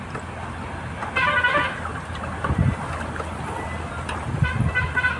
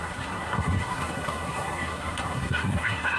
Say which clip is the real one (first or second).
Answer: first